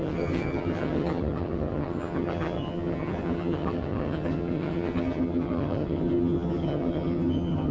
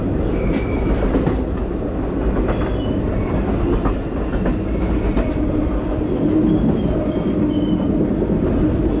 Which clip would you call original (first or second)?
second